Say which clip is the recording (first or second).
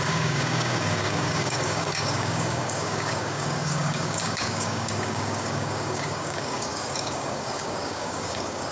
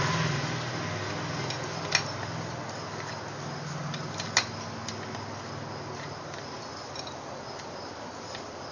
second